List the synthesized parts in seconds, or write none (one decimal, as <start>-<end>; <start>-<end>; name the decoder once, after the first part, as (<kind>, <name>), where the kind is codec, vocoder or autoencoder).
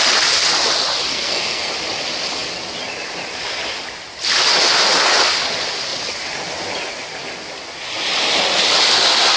1.1-1.7 (codec, SNAC)